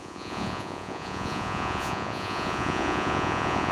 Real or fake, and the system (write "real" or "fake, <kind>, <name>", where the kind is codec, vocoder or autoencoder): fake, vocoder, Vocos